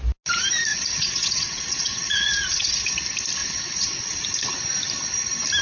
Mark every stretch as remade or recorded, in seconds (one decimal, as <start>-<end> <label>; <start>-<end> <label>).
0.0-0.7 recorded; 0.7-2.9 remade; 2.9-3.4 recorded; 3.4-4.2 remade; 4.2-5.6 recorded